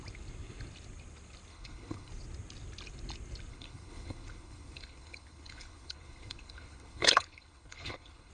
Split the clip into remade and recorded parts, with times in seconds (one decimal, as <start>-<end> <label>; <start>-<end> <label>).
0.0-1.5 recorded; 1.5-2.1 remade; 2.1-3.5 recorded; 3.5-8.3 remade